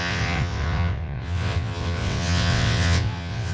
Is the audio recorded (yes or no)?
no